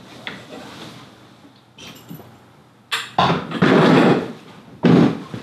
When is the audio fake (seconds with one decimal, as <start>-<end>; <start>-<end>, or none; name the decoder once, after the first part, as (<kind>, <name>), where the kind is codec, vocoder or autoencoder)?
none